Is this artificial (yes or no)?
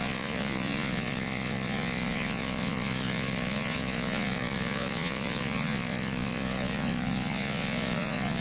yes